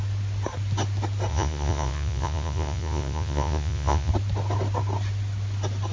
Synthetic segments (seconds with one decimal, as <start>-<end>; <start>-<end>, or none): 1.3-4.1